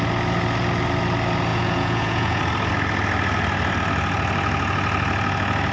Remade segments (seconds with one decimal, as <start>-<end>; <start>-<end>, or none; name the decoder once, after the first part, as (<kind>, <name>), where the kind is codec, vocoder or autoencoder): 1.5-2.4 (vocoder, Vocos)